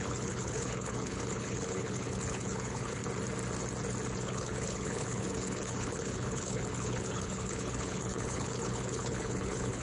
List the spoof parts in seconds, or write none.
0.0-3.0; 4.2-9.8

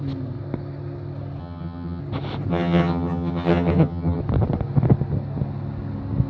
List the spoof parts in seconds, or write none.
1.4-2.0; 2.5-4.2